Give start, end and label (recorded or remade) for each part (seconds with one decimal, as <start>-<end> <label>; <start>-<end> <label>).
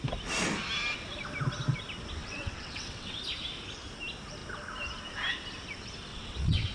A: 0.0-2.2 recorded; 2.2-3.2 remade; 3.2-6.1 recorded; 6.1-6.7 remade